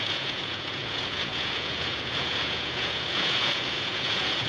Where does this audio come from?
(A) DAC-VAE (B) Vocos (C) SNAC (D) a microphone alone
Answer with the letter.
B